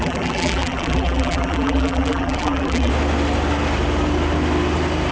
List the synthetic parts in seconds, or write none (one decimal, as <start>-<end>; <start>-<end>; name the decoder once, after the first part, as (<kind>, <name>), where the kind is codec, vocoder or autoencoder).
0.0-2.9 (vocoder, BigVGAN v2)